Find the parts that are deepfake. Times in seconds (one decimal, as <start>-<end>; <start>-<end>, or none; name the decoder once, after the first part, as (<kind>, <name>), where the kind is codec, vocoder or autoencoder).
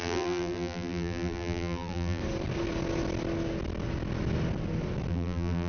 0.0-2.2 (vocoder, BigVGAN v2); 5.1-5.7